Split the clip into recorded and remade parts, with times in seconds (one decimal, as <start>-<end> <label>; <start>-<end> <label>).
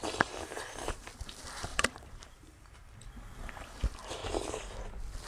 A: 0.0-4.2 remade; 4.2-5.3 recorded